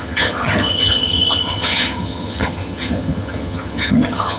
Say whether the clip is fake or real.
fake